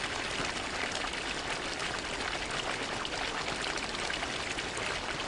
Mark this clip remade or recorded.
recorded